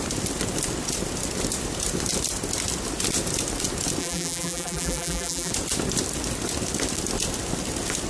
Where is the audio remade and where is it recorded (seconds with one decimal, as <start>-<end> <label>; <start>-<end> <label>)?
0.0-4.0 recorded; 4.0-5.5 remade; 5.5-8.1 recorded